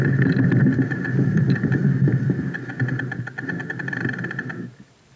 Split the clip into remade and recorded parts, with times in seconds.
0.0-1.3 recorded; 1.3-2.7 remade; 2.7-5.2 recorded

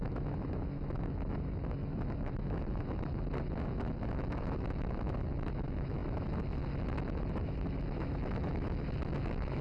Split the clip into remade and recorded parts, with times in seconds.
0.0-9.6 remade

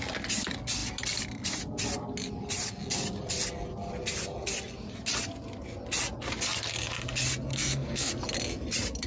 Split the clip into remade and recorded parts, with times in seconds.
0.0-7.5 recorded; 7.5-8.1 remade; 8.1-9.1 recorded

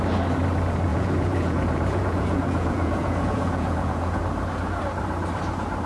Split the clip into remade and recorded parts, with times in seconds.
0.0-0.9 recorded; 0.9-4.2 remade; 4.2-5.9 recorded

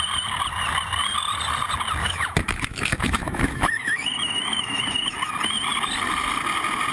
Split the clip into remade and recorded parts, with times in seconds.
0.0-2.0 recorded; 2.0-5.3 remade; 5.3-6.9 recorded